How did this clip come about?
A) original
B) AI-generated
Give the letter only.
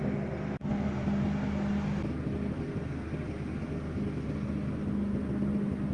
A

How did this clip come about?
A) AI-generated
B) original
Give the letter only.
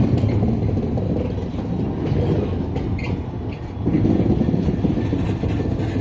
B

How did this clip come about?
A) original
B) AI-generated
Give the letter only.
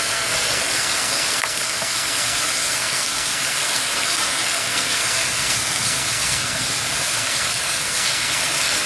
B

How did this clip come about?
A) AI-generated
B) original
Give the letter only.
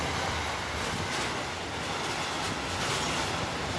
B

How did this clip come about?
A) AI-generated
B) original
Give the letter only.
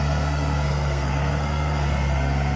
A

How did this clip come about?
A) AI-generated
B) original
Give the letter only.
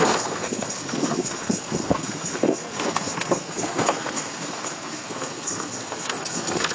A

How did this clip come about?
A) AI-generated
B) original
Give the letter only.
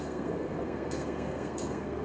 A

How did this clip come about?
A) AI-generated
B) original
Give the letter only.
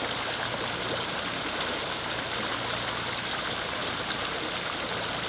B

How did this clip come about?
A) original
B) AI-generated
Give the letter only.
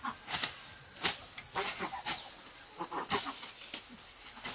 A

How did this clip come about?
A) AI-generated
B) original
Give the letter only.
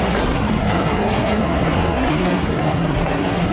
A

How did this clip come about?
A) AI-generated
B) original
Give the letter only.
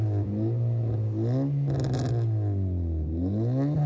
B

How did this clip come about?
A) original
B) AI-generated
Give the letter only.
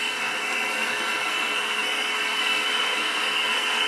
B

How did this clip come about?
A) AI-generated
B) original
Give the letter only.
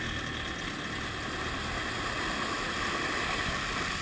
B